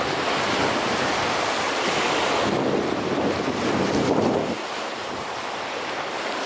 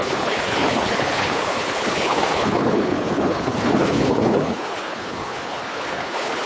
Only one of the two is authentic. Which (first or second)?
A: first